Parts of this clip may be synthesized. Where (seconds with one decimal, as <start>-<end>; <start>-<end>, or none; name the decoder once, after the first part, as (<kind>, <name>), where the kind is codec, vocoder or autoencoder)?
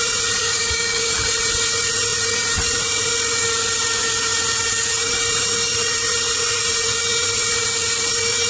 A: 0.4-1.1 (codec, DAC)